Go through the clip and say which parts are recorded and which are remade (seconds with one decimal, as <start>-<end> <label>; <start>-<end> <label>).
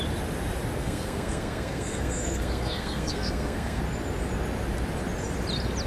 0.0-0.8 recorded; 0.8-3.8 remade; 3.8-5.9 recorded